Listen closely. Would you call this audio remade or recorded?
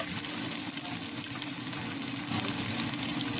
recorded